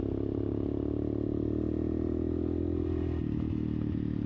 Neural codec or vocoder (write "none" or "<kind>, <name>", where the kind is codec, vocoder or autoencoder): none